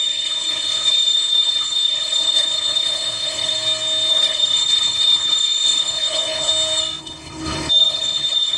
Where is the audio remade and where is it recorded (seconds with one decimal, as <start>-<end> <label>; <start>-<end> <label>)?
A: 0.0-3.5 remade; 3.5-4.1 recorded; 4.1-6.5 remade; 6.5-7.0 recorded; 7.0-8.6 remade